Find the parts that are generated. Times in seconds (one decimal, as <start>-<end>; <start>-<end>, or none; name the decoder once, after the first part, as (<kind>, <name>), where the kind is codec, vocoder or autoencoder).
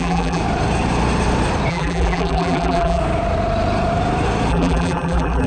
0.0-0.4 (vocoder, BigVGAN v2); 1.7-3.0; 4.5-5.5